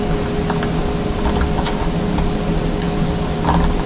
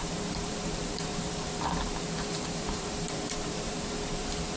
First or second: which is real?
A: first